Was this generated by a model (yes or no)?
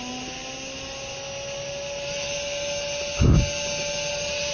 no